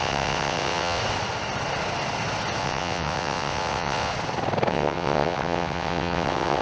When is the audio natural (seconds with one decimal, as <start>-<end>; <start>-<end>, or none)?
1.0-2.6; 4.1-4.7